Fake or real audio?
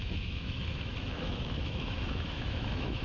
fake